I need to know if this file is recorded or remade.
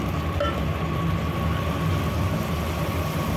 recorded